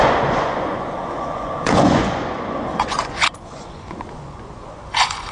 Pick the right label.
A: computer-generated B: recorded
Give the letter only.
A